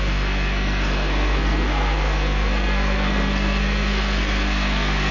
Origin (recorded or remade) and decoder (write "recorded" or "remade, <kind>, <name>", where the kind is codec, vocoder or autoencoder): remade, codec, SNAC